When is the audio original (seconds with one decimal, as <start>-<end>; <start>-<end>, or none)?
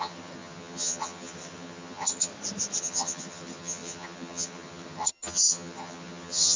2.3-2.8